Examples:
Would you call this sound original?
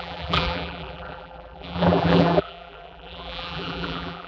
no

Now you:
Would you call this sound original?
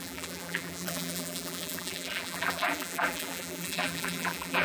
no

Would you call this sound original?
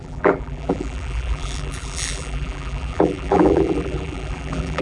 no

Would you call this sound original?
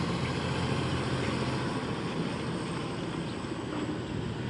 yes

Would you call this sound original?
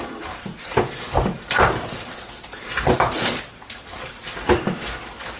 yes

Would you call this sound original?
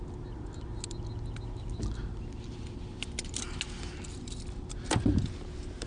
yes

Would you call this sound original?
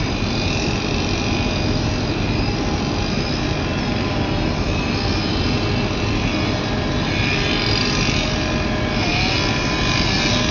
yes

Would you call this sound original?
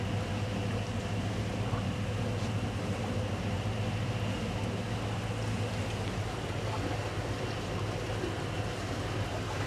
yes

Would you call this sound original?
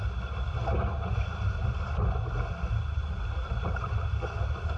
yes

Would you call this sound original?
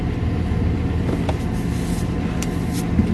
no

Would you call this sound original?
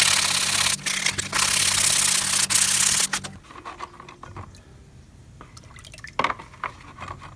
yes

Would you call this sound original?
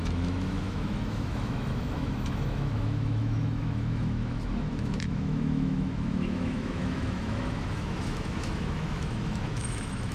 no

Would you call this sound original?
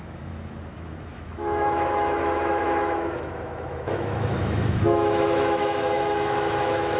no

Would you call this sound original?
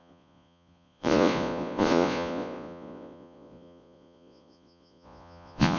no